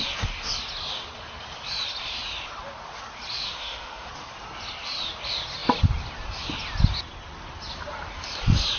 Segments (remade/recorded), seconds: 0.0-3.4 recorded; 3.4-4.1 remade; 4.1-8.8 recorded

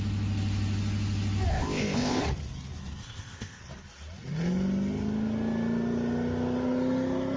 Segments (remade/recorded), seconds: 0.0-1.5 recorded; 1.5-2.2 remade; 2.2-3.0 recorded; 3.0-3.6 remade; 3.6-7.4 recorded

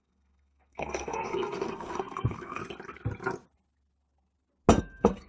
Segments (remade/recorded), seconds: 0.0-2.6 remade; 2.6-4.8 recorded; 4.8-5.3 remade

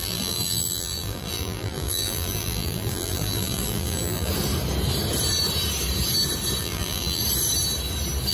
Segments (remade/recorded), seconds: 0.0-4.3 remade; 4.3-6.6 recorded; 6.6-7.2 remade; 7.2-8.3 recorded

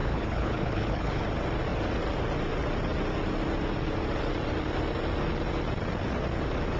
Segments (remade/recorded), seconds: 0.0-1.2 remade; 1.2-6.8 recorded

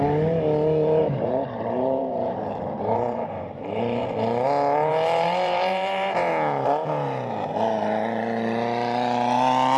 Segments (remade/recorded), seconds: 0.0-1.0 recorded; 1.0-3.8 remade; 3.8-4.9 recorded; 4.9-6.3 remade; 6.3-9.8 recorded